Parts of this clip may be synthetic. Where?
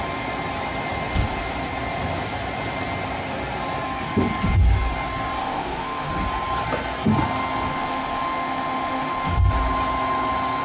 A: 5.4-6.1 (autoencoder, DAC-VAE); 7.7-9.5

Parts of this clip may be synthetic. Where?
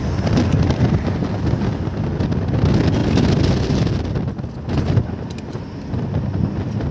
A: none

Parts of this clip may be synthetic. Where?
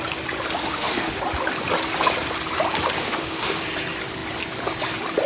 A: 0.6-1.2 (autoencoder, DAC-VAE); 3.0-3.6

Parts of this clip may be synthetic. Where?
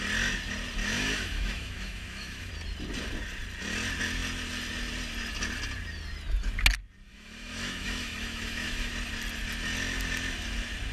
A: 0.8-2.5 (autoencoder, DAC-VAE); 7.1-8.9